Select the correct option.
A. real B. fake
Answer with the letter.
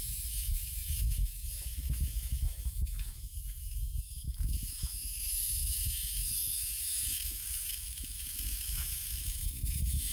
B